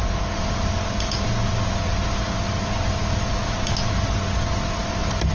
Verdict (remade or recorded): recorded